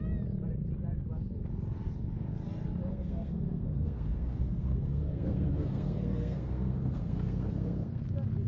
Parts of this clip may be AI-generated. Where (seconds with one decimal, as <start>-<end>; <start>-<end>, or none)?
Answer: 2.9-8.0